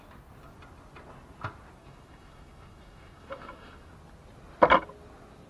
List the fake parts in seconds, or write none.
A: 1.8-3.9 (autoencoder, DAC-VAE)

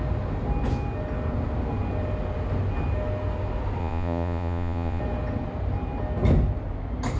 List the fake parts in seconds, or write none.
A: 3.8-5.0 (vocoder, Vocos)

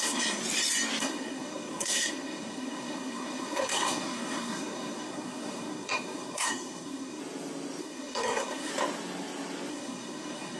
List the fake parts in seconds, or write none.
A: 0.0-0.4 (codec, SNAC); 1.0-7.2; 7.8-8.7; 9.7-10.6